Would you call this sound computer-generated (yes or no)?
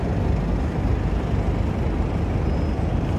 no